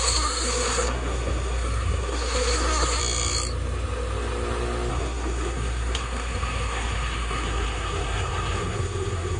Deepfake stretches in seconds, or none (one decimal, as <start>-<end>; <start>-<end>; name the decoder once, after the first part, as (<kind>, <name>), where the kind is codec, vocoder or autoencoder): 0.0-3.0 (codec, SNAC); 4.9-9.4